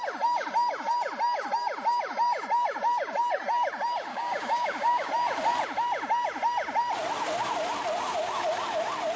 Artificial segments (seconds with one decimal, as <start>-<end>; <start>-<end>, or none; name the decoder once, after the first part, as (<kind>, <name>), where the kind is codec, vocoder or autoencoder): 4.1-5.1 (codec, DAC)